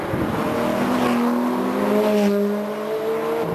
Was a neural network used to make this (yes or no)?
no